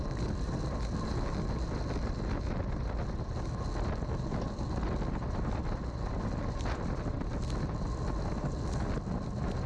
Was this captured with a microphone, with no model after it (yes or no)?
yes